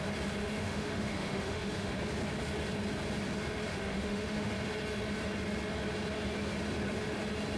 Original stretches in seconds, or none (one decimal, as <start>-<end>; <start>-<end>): 0.0-0.4; 1.9-3.7; 4.5-7.6